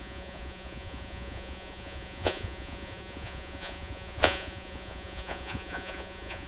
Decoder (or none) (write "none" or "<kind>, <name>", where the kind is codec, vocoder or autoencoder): vocoder, Vocos